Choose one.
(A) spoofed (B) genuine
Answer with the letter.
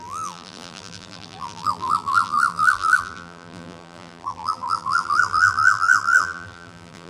A